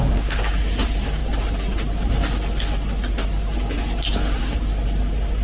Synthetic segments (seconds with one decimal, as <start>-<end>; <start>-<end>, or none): none